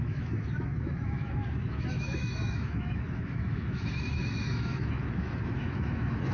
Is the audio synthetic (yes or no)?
yes